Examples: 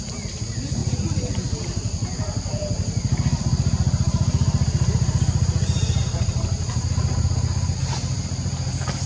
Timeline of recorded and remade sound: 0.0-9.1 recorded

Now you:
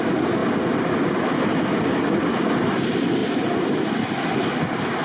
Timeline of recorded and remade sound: 0.0-5.0 recorded

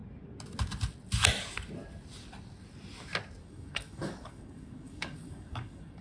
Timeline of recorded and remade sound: 0.0-3.4 recorded; 3.4-6.0 remade